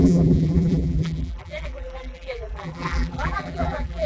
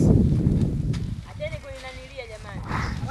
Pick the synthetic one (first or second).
first